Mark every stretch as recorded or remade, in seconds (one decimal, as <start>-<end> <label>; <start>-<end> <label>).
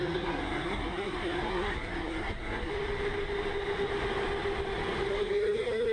0.0-2.7 remade; 2.7-5.1 recorded; 5.1-5.9 remade